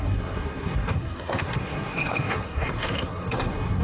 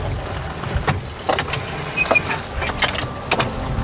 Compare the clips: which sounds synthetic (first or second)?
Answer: first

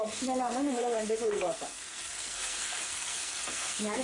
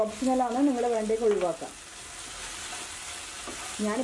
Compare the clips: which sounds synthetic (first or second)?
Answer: first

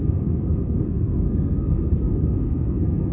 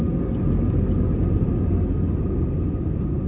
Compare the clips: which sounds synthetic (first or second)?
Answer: first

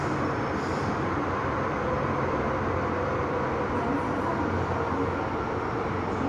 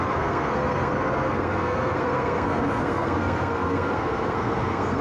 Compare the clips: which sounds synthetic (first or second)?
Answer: second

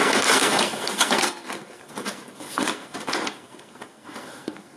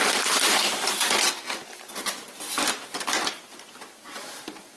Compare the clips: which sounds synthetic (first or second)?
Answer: first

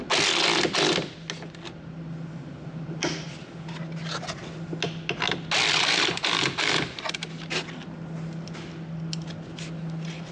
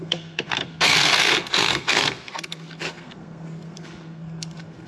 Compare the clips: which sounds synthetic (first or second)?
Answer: second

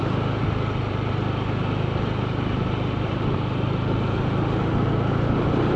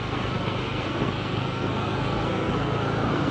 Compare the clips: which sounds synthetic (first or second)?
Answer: second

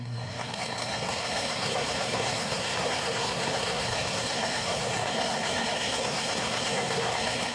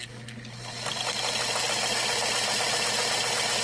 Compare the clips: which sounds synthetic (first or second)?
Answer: first